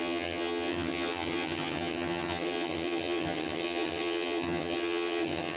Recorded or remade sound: remade